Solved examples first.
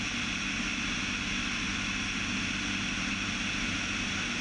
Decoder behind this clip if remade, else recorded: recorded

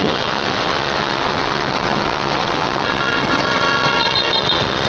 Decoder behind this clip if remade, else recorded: remade, vocoder, WaveNeXt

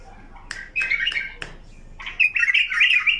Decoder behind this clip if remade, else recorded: recorded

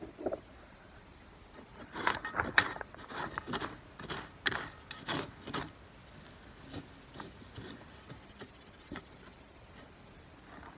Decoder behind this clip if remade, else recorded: recorded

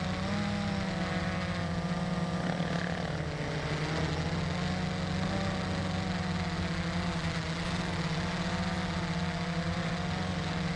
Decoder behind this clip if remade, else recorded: recorded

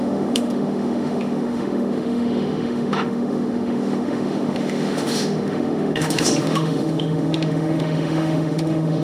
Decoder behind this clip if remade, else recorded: remade, autoencoder, DAC-VAE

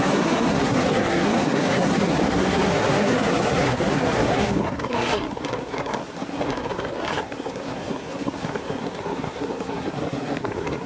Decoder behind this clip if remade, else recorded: remade, codec, SNAC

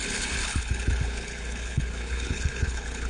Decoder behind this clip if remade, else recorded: remade, codec, HILCodec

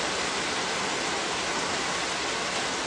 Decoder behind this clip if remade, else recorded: recorded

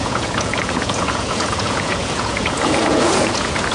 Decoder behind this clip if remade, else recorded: remade, vocoder, Vocos